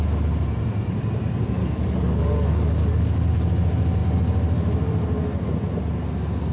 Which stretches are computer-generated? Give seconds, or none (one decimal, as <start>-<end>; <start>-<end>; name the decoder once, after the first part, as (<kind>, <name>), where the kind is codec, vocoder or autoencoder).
1.6-3.3 (codec, DAC)